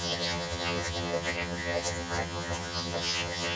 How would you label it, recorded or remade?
remade